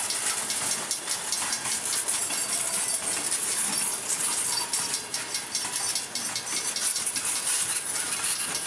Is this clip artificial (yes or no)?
no